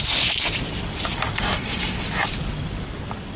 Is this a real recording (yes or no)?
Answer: yes